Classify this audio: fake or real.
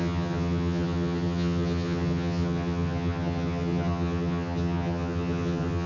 fake